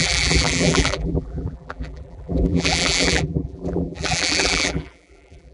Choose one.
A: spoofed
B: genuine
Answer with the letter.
A